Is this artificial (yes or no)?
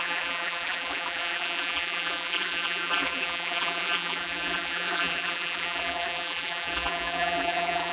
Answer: yes